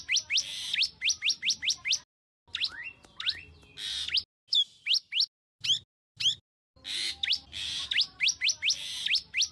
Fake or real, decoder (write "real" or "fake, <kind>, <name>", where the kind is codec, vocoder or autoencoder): real